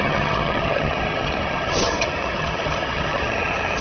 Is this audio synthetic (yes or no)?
yes